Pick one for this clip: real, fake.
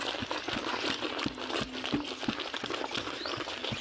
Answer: real